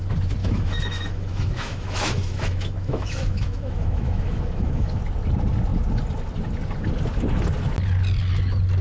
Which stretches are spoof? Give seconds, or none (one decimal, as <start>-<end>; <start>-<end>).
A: 0.4-5.0